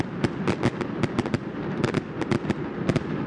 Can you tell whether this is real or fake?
real